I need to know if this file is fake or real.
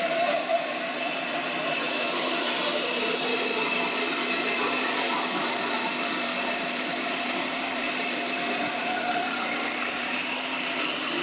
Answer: fake